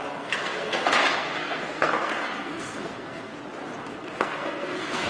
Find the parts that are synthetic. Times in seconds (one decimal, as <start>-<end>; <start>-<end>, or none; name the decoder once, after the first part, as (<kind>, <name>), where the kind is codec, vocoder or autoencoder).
0.0-3.3 (codec, SNAC); 3.8-5.1